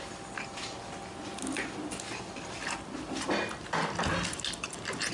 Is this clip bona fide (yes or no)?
yes